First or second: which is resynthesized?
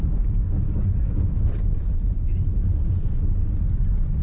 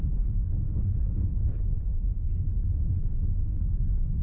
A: second